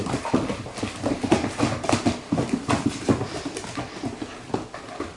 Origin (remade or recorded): recorded